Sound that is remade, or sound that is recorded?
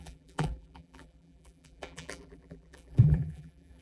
remade